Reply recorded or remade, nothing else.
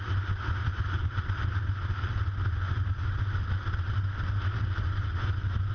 recorded